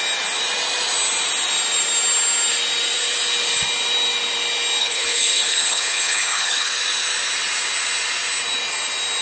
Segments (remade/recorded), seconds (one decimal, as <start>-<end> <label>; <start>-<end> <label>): 0.0-4.8 recorded; 4.8-6.7 remade; 6.7-9.2 recorded